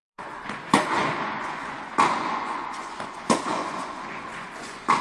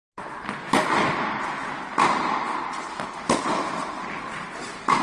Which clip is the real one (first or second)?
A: second